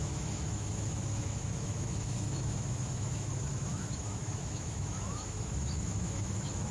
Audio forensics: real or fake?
fake